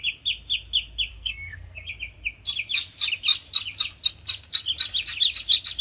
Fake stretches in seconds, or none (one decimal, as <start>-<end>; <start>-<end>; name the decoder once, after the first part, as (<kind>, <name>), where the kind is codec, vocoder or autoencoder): 1.1-1.9 (codec, SNAC)